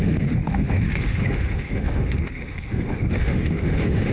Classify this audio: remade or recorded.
remade